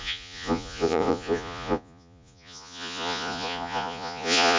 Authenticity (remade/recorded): remade